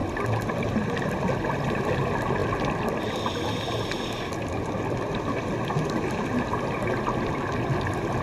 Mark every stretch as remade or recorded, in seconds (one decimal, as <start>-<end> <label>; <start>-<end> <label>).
0.0-8.2 recorded